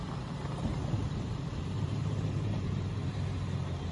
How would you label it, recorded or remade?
remade